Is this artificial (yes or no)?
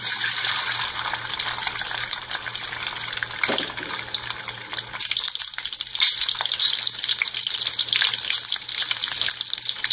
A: no